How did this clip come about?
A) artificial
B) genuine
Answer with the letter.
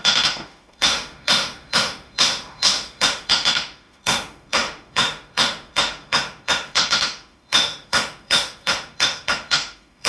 A